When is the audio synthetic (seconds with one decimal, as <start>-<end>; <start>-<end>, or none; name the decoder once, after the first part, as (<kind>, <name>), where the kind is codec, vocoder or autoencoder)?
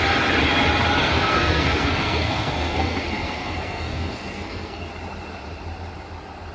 1.0-4.9 (codec, SNAC)